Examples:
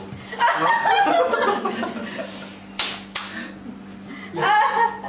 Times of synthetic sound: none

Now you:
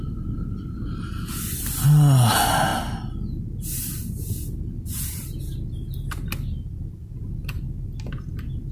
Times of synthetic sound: none

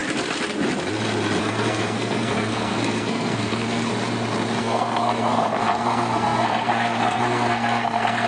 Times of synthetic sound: 1.4-3.9 (codec, SNAC); 4.6-8.3

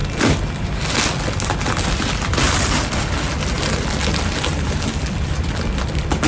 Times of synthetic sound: none